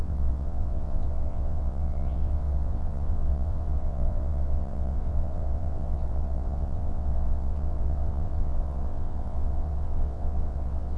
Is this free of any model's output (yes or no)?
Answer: no